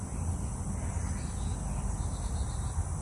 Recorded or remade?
recorded